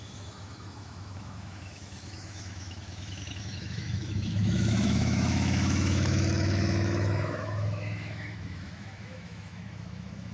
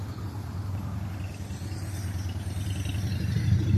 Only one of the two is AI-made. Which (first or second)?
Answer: first